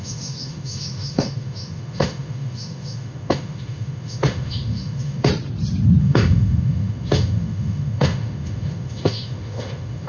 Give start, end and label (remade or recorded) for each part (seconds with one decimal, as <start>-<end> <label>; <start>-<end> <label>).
0.0-5.3 remade; 5.3-6.0 recorded; 6.0-10.1 remade